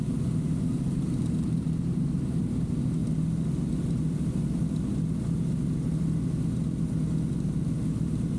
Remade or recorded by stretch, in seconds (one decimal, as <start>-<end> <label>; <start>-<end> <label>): 0.0-3.0 remade; 3.0-7.5 recorded; 7.5-8.4 remade

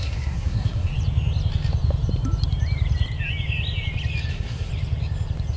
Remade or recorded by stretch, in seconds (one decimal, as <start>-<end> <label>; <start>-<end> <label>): 0.0-0.9 remade; 0.9-4.3 recorded; 4.3-4.7 remade; 4.7-5.6 recorded

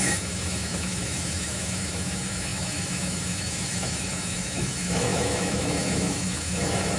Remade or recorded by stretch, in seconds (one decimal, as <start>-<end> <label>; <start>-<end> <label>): 0.0-7.0 remade

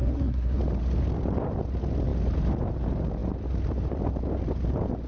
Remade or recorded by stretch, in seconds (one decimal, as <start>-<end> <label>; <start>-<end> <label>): 0.0-0.6 remade; 0.6-5.1 recorded

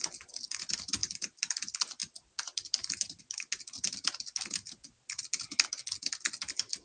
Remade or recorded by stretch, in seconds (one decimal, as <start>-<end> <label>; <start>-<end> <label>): 0.0-1.0 recorded; 1.0-1.5 remade; 1.5-2.0 recorded; 2.0-3.2 remade; 3.2-6.8 recorded

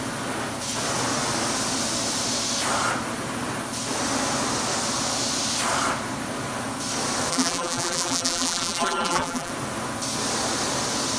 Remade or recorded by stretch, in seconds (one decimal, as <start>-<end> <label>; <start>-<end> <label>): 0.0-7.3 recorded; 7.3-9.5 remade; 9.5-11.2 recorded